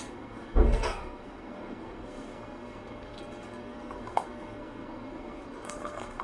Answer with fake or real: fake